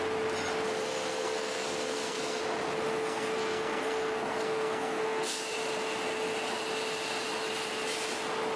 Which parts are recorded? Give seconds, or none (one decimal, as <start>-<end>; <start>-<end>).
0.0-1.1; 2.4-2.9; 5.4-8.6